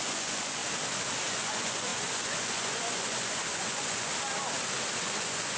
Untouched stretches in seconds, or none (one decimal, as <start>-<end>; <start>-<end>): 0.6-1.3; 4.1-5.0